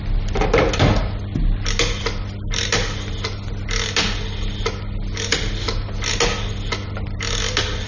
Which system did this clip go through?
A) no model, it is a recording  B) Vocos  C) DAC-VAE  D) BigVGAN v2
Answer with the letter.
A